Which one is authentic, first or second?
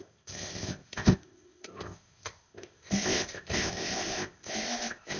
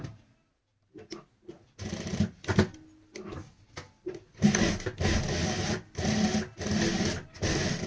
second